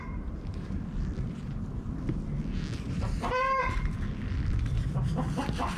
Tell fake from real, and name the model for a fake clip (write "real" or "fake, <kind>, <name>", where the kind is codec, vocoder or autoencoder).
real